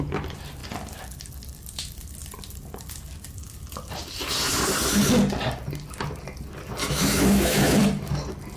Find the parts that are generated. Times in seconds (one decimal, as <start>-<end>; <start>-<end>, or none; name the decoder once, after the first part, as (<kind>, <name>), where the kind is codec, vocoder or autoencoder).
6.8-7.8 (autoencoder, DAC-VAE)